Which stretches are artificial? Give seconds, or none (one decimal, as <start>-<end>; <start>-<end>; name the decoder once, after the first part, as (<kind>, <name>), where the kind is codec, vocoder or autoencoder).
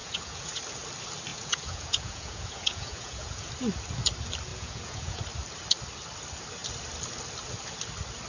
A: 0.0-0.6 (vocoder, Vocos); 1.3-3.5; 4.5-5.2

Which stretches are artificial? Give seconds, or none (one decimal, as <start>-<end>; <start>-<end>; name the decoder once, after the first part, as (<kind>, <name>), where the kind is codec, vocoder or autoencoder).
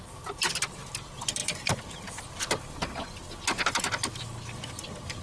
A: none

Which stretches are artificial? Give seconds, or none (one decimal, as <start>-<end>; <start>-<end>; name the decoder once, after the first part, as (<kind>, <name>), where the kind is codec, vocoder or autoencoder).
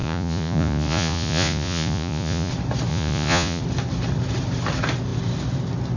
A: 0.0-2.5 (vocoder, Vocos); 2.9-3.6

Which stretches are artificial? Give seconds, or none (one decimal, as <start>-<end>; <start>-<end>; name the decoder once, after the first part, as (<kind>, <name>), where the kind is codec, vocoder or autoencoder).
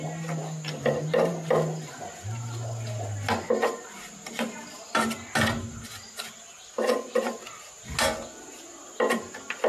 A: none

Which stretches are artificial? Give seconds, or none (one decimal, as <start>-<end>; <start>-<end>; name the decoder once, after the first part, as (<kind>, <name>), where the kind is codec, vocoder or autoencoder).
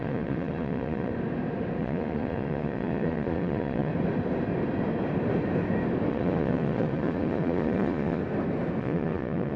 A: 0.0-1.1 (vocoder, Vocos); 1.8-3.9; 6.1-8.2; 8.8-9.6